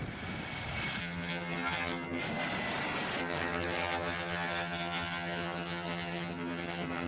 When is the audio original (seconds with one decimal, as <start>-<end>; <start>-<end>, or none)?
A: 0.0-1.0; 2.2-3.2